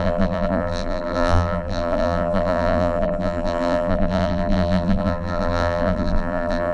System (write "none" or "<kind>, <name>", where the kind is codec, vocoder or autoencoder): vocoder, BigVGAN v2